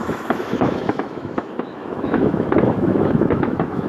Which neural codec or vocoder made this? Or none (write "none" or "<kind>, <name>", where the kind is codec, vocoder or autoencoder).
autoencoder, DAC-VAE